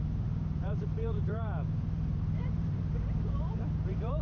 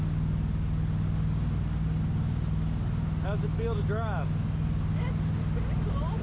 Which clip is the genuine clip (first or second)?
second